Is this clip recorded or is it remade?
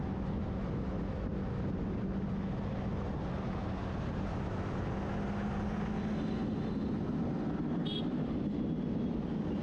recorded